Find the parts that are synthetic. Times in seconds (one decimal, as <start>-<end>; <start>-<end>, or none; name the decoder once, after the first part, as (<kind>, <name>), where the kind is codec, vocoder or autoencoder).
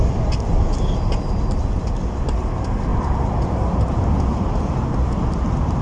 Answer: none